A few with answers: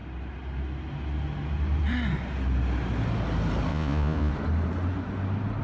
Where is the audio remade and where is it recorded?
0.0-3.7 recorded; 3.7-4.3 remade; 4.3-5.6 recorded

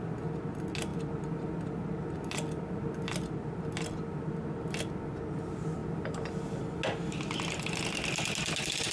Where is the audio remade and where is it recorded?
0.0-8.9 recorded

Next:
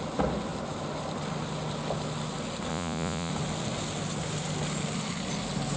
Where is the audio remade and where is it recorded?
0.0-2.7 recorded; 2.7-3.3 remade; 3.3-5.8 recorded